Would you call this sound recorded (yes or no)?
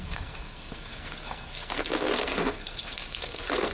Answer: no